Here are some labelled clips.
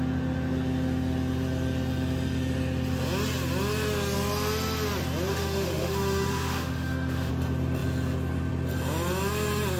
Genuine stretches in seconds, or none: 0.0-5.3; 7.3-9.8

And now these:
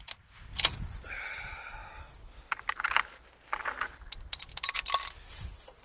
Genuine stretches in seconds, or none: 0.5-1.1; 1.8-5.3

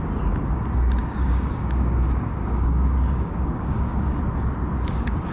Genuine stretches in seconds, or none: 0.0-1.0; 4.2-5.3